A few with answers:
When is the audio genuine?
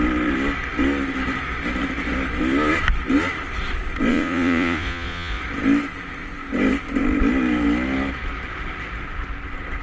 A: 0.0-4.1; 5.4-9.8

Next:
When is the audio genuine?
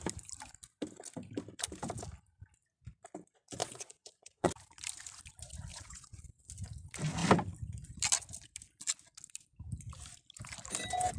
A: 0.0-3.6; 4.5-5.7; 6.2-11.2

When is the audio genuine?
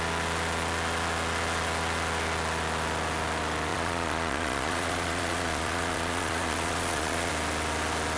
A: 0.0-3.7; 7.3-8.2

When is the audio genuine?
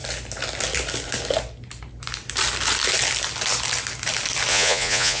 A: 0.0-4.5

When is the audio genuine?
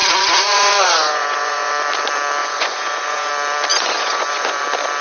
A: 1.7-2.4; 3.3-3.7; 4.6-5.0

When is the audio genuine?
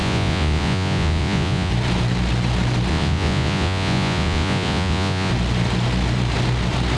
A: 1.7-2.9; 5.3-7.0